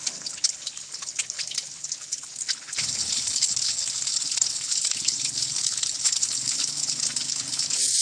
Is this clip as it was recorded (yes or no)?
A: no